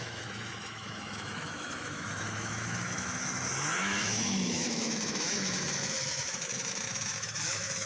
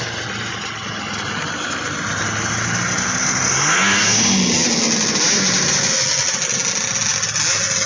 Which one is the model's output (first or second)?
first